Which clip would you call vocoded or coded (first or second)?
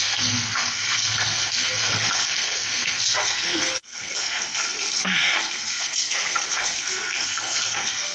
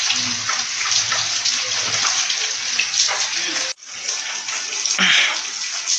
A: first